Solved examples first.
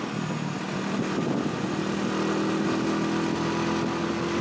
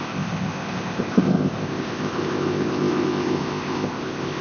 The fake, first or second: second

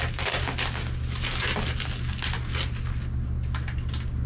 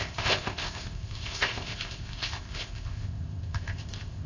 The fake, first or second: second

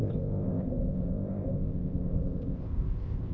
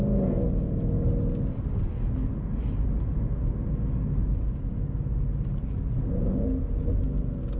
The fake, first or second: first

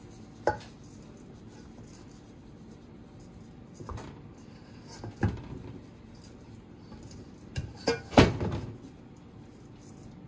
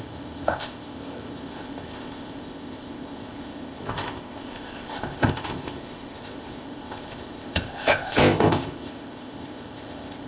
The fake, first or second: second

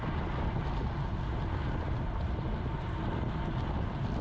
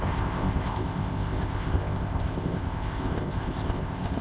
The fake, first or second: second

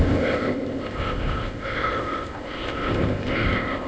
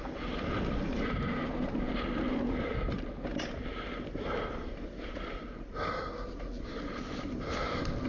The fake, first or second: first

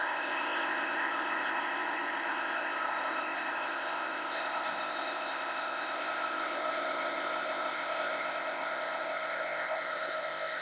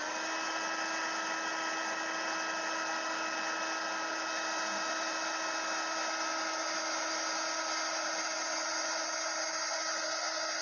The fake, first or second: first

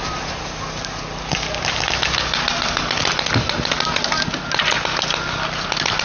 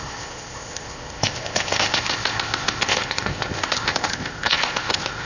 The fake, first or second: second